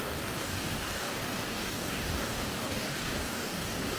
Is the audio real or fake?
fake